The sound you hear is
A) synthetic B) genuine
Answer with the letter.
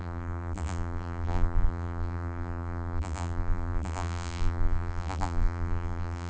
A